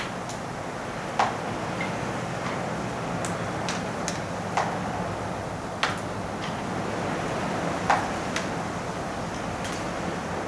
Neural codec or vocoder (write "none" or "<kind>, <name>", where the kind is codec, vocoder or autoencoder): none